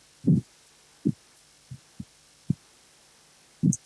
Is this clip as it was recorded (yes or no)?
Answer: yes